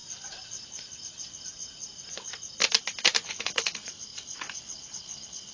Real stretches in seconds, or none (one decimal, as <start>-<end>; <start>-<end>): 0.0-3.3